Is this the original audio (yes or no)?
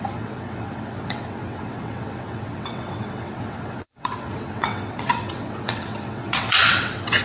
no